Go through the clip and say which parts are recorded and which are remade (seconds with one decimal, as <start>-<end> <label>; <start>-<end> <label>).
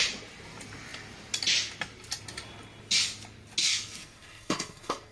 0.0-3.6 recorded; 3.6-5.1 remade